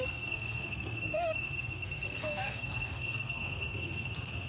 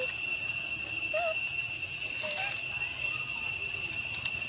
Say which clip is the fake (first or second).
first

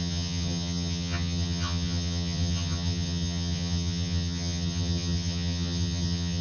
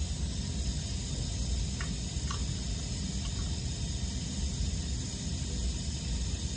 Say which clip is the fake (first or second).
first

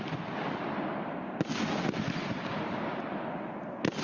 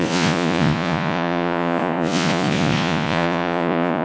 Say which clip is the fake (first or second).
second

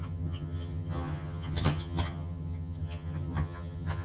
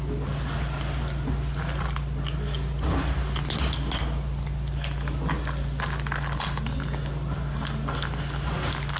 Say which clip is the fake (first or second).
first